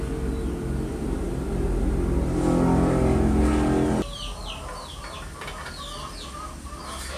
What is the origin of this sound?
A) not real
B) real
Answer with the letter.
B